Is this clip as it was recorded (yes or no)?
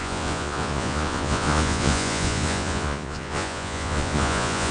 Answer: no